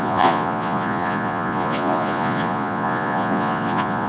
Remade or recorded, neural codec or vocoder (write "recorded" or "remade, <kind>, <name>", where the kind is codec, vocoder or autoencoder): remade, vocoder, Vocos